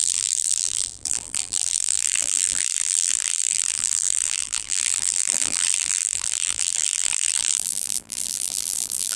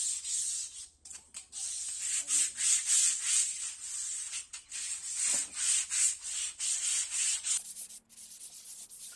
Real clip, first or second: second